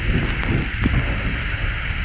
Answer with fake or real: real